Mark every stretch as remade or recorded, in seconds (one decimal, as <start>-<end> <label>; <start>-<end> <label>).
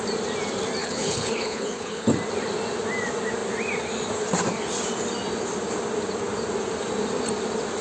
0.0-0.8 recorded; 0.8-2.1 remade; 2.1-7.8 recorded